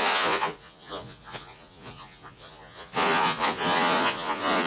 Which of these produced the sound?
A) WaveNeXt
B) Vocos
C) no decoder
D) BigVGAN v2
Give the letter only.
B